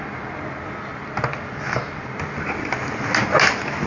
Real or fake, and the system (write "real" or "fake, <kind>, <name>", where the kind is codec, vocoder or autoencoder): real